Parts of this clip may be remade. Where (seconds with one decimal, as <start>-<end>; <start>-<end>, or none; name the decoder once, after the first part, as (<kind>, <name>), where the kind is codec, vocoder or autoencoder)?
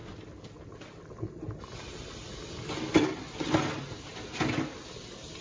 none